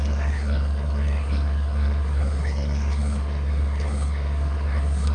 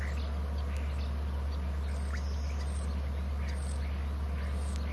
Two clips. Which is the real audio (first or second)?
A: second